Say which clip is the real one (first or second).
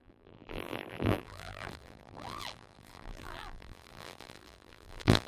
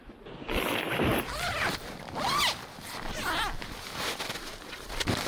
second